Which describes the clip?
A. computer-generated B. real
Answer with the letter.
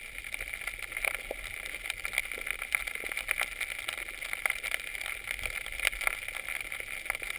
B